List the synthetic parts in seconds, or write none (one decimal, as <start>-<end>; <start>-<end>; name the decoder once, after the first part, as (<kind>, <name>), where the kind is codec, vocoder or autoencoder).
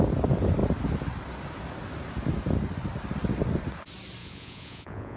4.2-5.2 (vocoder, Vocos)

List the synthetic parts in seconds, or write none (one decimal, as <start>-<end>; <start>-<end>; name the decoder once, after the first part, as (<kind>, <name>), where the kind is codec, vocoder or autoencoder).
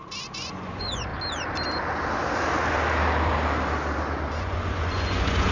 0.0-1.1 (vocoder, Vocos); 4.4-5.5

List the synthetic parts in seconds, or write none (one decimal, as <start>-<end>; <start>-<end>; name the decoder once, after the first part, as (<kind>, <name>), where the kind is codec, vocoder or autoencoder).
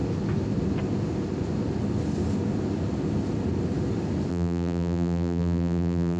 4.3-6.2 (vocoder, BigVGAN v2)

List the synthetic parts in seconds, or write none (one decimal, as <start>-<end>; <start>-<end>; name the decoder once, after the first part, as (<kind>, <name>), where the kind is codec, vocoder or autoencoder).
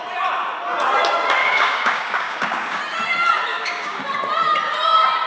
1.4-2.8 (codec, DAC); 3.5-4.0